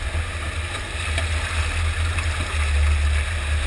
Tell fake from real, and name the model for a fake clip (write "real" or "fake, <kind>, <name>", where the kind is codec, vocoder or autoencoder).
real